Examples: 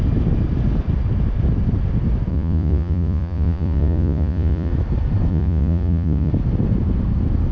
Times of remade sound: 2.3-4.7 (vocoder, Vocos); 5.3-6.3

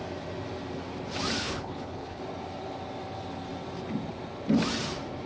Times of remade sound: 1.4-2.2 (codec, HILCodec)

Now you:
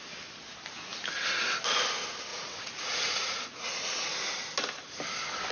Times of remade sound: 2.3-4.1 (vocoder, Vocos)

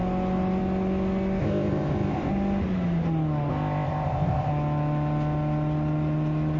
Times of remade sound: 1.4-2.3 (codec, ZipCodec); 3.5-4.5

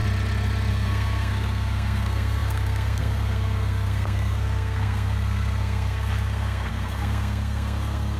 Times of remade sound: 0.7-8.2 (codec, SNAC)

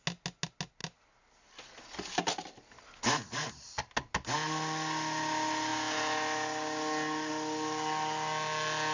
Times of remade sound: none